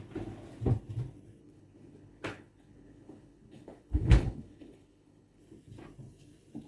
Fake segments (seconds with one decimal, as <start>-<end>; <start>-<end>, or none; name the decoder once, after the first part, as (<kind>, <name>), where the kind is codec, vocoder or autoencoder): 1.4-5.4 (codec, HILCodec)